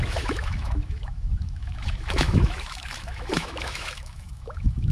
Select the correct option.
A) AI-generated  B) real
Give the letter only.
A